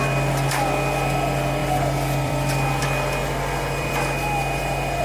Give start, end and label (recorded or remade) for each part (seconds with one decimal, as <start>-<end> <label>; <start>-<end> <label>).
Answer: 0.0-1.6 recorded; 1.6-2.8 remade; 2.8-3.2 recorded; 3.2-5.0 remade